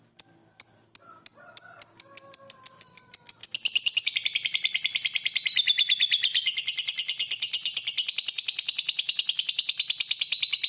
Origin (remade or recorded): recorded